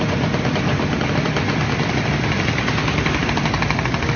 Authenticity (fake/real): real